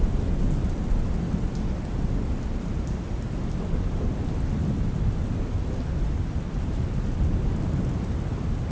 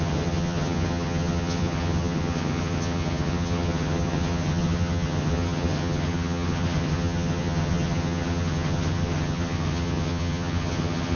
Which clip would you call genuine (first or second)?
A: first